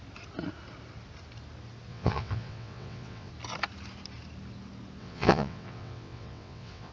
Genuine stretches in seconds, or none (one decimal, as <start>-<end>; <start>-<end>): 0.0-1.9; 3.3-5.0